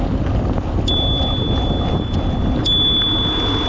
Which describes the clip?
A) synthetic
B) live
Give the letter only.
B